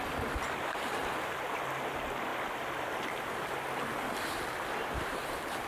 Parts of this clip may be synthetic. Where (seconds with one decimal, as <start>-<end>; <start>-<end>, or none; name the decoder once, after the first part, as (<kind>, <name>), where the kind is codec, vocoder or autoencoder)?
none